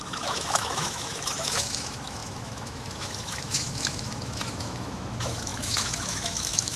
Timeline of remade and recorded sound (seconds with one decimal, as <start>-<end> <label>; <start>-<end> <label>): 0.0-6.8 remade